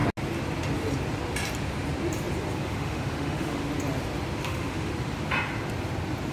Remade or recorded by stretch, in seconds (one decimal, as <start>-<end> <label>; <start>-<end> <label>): 0.0-2.7 recorded; 2.7-3.6 remade; 3.6-4.4 recorded; 4.4-4.9 remade; 4.9-6.3 recorded